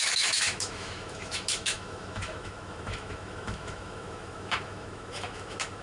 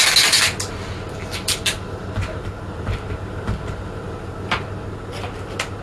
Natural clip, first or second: second